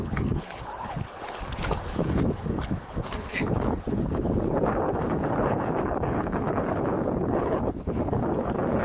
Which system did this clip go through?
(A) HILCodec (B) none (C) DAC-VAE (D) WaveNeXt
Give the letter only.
A